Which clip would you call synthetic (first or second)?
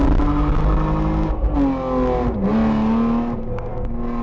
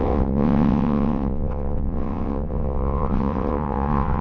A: second